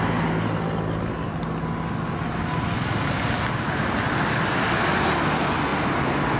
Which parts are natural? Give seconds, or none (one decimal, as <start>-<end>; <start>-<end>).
0.0-6.4